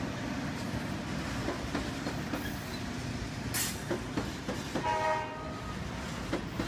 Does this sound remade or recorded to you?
recorded